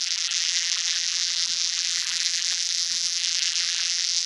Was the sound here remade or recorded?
remade